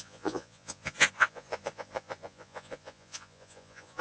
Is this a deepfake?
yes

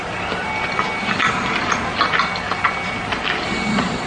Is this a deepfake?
no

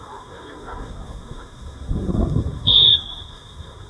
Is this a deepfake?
yes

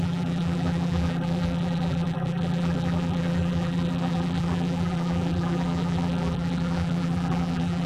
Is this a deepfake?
yes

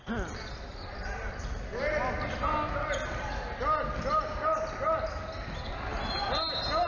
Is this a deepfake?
no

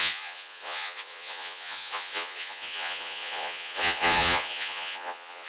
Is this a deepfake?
yes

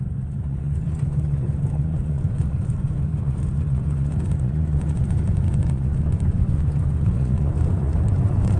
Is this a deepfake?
yes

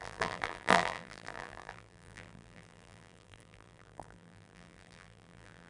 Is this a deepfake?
yes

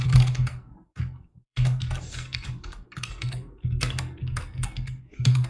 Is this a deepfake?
yes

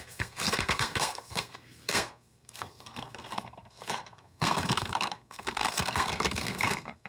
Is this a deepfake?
yes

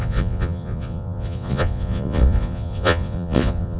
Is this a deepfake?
yes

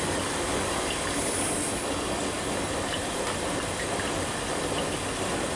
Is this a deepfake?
no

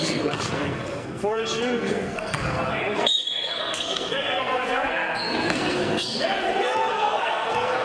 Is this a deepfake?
yes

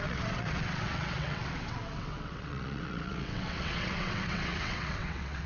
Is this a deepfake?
yes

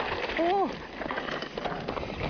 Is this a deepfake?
no